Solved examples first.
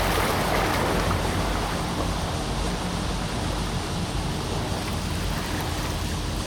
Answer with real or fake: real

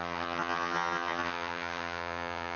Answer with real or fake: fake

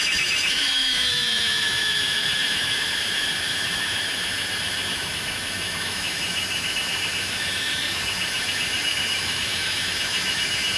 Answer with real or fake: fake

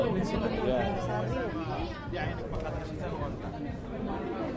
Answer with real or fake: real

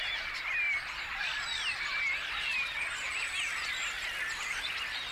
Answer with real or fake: real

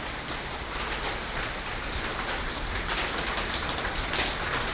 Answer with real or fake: real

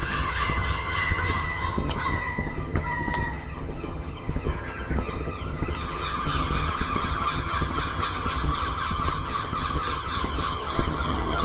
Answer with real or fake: fake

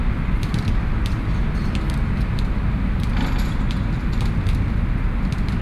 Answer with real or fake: real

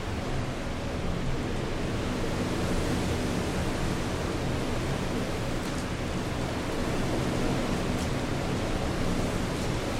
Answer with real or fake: real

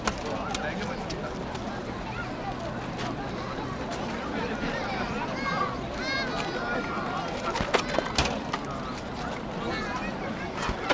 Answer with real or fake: real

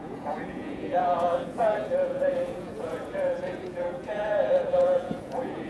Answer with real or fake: fake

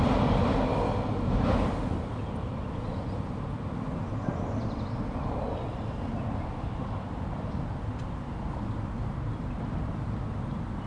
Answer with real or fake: real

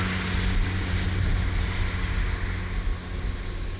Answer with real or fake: real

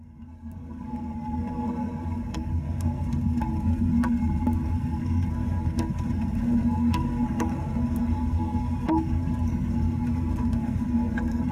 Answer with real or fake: fake